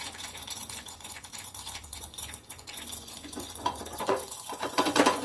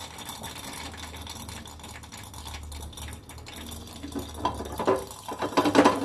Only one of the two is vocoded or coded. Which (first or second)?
first